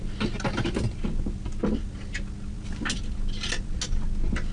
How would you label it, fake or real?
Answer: real